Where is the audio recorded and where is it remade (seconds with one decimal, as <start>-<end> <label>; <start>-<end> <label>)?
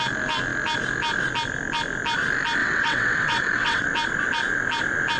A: 0.0-2.6 recorded; 2.6-3.9 remade; 3.9-5.2 recorded